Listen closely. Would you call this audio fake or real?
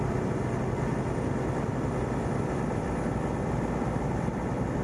real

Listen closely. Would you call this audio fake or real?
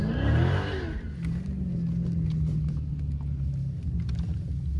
real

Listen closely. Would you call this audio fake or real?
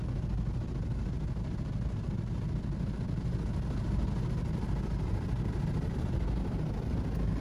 real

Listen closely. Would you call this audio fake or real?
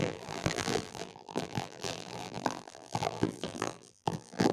fake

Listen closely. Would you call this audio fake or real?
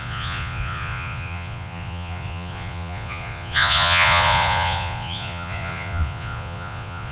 fake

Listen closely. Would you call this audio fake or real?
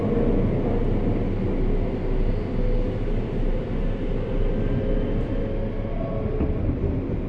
real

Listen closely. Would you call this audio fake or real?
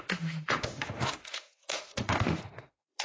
fake